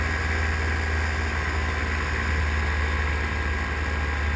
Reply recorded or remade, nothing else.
recorded